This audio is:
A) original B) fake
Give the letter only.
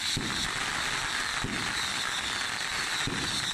A